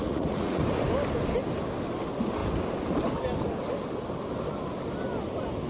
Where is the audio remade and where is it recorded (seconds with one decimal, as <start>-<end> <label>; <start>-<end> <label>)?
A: 0.0-0.6 remade; 0.6-5.7 recorded